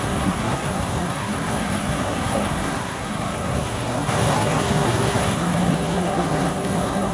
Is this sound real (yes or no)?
no